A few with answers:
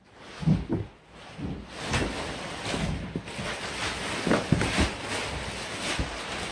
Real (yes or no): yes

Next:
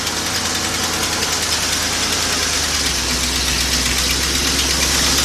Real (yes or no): yes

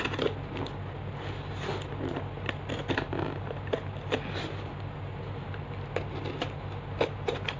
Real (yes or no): yes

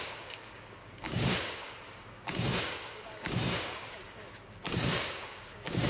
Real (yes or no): no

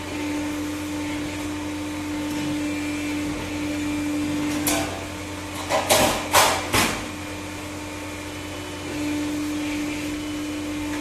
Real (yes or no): yes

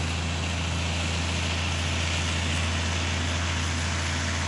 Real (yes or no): yes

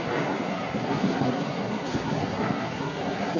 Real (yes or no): no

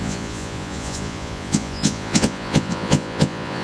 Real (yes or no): no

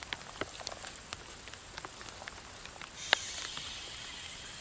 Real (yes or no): yes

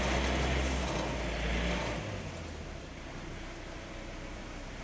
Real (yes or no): yes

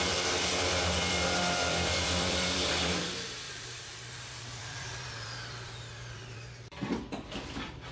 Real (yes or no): no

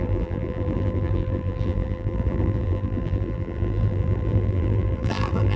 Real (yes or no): no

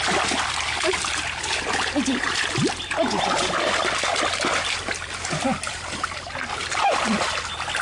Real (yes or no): yes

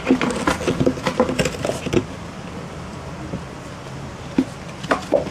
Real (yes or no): yes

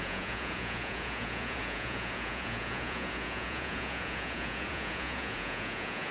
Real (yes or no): no